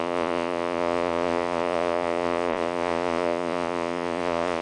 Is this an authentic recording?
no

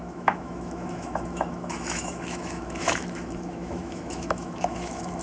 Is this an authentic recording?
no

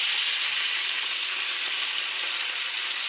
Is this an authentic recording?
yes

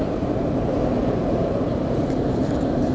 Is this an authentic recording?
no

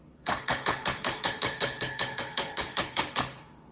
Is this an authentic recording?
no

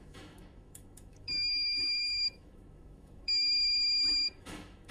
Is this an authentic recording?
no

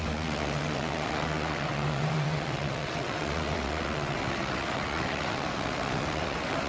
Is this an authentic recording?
no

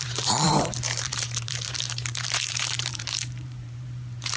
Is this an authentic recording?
no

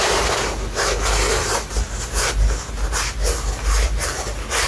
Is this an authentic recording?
yes